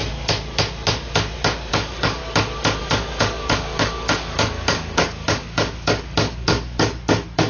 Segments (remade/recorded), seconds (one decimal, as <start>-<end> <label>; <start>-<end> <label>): 0.0-1.7 recorded; 1.7-2.2 remade; 2.2-2.8 recorded; 2.8-7.5 remade